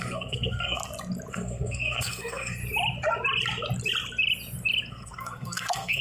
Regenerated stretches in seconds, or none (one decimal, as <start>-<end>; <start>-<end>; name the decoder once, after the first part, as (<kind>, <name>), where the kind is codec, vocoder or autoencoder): 0.0-0.8 (codec, SNAC); 1.3-2.6; 4.9-6.0